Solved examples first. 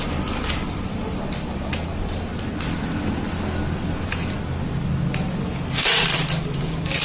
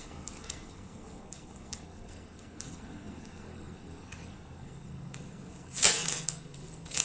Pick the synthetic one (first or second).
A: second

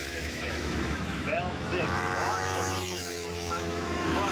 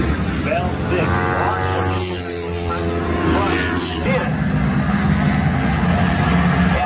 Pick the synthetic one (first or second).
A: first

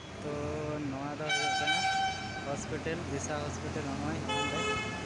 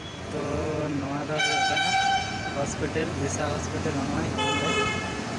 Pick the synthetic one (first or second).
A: second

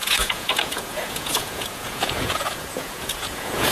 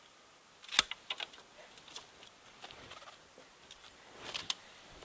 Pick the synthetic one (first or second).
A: first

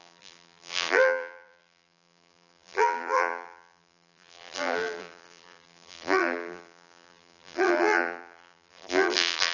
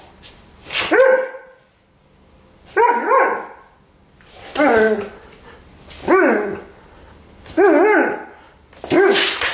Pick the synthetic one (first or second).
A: first